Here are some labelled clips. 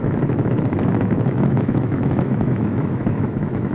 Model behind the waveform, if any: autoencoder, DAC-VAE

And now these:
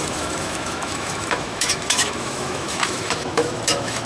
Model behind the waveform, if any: autoencoder, DAC-VAE